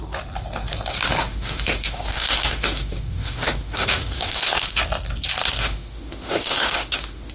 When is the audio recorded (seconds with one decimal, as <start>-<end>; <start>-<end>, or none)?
0.0-1.2; 4.8-5.6